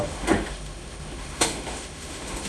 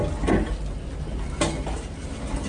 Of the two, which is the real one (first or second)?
second